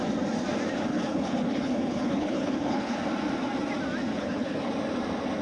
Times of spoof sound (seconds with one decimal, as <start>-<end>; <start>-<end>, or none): 0.9-3.0; 4.1-4.7